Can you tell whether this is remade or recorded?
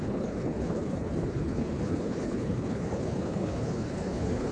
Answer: remade